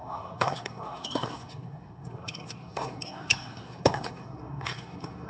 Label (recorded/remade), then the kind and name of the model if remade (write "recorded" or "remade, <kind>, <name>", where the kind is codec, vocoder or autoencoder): remade, codec, SNAC